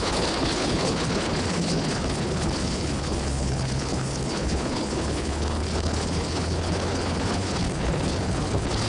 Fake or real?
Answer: fake